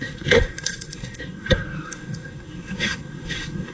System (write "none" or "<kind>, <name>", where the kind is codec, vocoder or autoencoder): codec, SNAC